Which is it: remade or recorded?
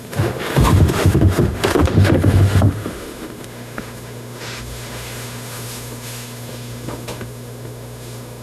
remade